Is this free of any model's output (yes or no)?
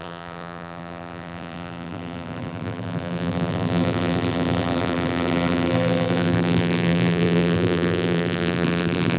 no